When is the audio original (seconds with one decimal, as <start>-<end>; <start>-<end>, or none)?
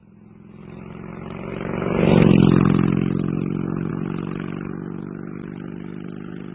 0.0-6.5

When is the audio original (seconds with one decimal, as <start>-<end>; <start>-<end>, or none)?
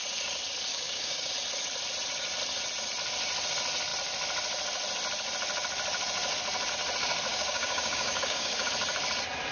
0.0-0.7; 1.3-7.3; 8.7-9.5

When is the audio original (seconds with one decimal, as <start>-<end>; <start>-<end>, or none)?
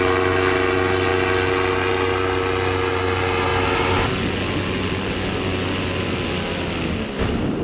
0.0-7.6